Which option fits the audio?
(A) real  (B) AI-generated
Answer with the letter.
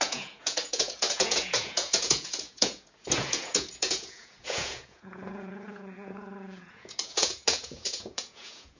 B